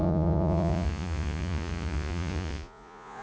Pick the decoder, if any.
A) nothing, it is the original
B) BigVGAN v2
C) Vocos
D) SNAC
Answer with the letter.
C